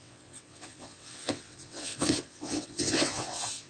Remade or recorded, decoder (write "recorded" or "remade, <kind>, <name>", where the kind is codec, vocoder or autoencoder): remade, vocoder, WaveNeXt